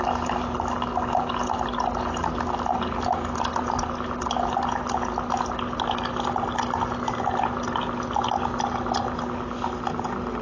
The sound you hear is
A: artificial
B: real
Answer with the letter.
B